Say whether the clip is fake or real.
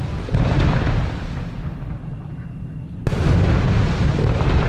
real